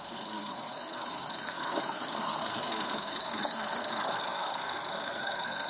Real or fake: fake